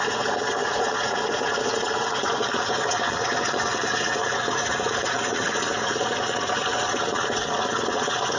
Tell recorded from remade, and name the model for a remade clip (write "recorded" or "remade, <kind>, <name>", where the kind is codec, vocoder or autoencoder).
remade, vocoder, Vocos